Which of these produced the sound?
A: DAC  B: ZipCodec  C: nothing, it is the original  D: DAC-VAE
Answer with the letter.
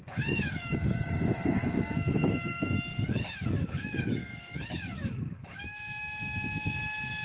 A